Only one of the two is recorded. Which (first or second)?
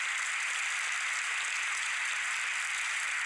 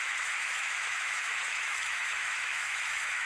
first